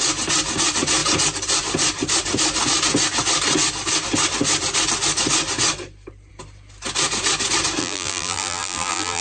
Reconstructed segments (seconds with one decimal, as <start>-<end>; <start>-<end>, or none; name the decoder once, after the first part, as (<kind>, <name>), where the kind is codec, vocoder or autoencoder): 7.8-9.2 (vocoder, BigVGAN v2)